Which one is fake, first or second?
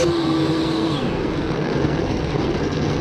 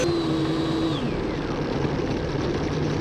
first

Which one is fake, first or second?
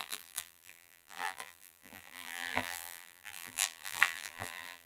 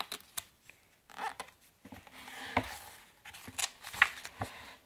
first